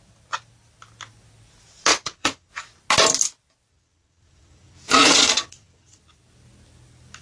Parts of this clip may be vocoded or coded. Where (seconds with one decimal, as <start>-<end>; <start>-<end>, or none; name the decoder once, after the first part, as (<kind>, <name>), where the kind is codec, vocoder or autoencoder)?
1.9-2.5 (vocoder, Vocos); 3.7-6.0